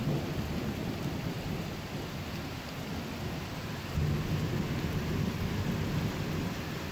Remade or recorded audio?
recorded